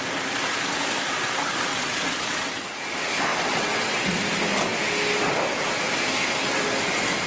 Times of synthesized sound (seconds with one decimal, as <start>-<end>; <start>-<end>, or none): 1.7-2.6; 3.3-4.2